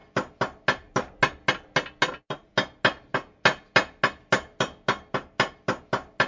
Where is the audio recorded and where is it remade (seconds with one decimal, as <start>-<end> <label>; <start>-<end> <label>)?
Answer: 0.0-6.3 recorded